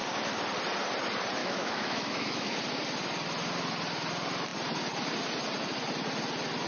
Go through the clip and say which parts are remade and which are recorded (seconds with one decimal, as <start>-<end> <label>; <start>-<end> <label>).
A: 0.0-1.4 recorded; 1.4-2.6 remade; 2.6-6.7 recorded